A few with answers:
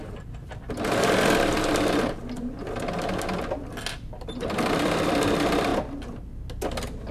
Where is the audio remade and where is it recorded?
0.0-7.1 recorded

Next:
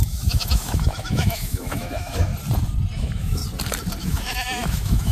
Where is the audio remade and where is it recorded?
0.0-2.3 remade; 2.3-3.0 recorded; 3.0-3.4 remade; 3.4-4.0 recorded; 4.0-5.1 remade

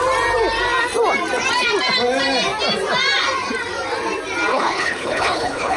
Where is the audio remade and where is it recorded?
0.0-4.5 recorded; 4.5-5.8 remade

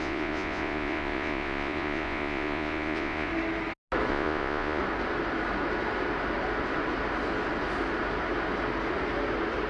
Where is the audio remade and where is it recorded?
0.0-3.3 remade; 3.3-4.1 recorded; 4.1-4.8 remade; 4.8-9.7 recorded

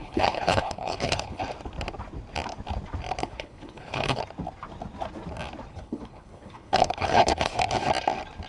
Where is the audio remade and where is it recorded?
0.0-1.4 remade; 1.4-3.2 recorded; 3.2-4.2 remade; 4.2-5.7 recorded; 5.7-7.5 remade; 7.5-8.5 recorded

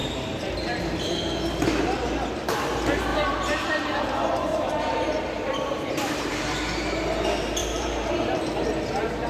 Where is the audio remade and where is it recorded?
0.0-0.8 remade; 0.8-3.1 recorded; 3.1-4.1 remade; 4.1-4.5 recorded; 4.5-6.5 remade; 6.5-7.6 recorded; 7.6-8.5 remade; 8.5-9.3 recorded